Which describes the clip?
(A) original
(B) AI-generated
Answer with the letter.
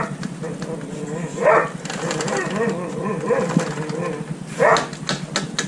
A